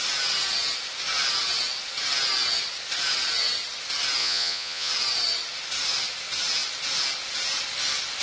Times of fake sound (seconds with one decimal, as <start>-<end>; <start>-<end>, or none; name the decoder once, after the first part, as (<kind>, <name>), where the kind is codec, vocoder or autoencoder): 4.2-4.9 (vocoder, Vocos)